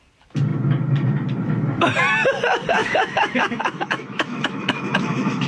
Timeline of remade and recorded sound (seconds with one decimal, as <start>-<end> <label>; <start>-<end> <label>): 0.0-2.8 recorded; 2.8-5.5 remade